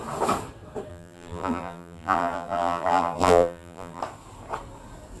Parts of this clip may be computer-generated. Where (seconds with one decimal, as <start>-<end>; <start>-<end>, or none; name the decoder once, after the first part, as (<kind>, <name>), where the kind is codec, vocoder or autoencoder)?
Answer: 0.9-4.0 (vocoder, BigVGAN v2)